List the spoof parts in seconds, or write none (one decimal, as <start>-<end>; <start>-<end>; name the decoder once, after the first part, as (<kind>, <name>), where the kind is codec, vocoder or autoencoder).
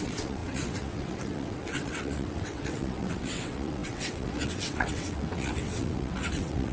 0.0-6.7 (vocoder, WaveNeXt)